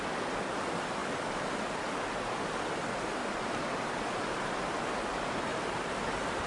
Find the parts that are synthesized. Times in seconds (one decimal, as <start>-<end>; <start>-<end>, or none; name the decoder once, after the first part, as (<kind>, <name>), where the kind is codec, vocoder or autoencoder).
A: 3.2-4.6 (vocoder, BigVGAN v2); 5.5-6.5